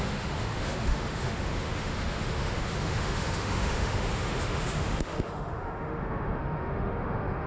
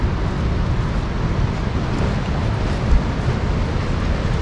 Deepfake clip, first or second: first